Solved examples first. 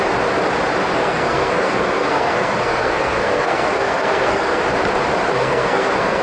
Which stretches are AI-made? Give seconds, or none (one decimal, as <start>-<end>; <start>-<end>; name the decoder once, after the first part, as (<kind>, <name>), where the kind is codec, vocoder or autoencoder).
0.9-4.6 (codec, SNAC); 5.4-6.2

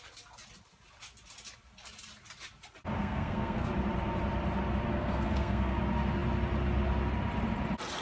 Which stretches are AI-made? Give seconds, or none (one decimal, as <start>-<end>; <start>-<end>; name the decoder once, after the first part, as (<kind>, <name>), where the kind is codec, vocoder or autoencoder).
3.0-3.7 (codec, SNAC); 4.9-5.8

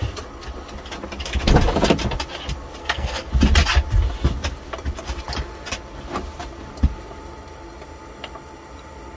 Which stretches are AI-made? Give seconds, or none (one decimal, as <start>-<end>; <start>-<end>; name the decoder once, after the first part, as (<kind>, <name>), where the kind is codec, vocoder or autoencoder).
2.8-3.3 (codec, SNAC)